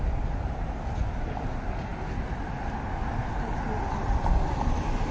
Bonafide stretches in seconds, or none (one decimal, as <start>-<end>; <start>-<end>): 0.0-5.1